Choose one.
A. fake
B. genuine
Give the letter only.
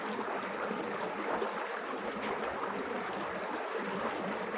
B